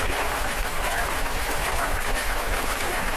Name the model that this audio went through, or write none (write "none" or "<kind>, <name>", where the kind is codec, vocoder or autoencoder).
codec, DAC